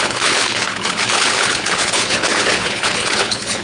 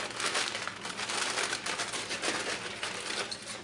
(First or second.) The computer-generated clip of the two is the first